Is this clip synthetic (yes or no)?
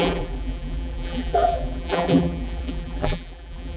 yes